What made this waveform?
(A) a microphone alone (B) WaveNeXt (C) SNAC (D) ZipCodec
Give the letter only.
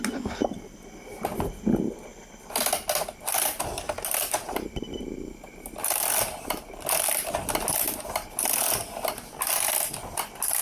A